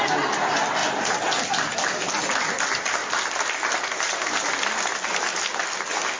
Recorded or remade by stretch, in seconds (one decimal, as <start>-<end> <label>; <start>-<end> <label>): 0.0-6.2 recorded